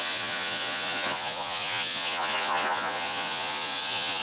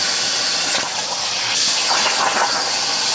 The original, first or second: second